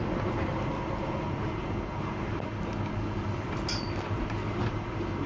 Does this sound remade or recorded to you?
recorded